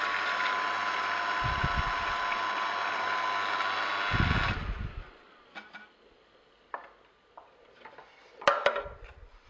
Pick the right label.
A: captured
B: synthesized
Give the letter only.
A